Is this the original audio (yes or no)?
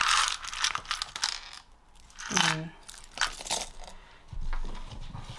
yes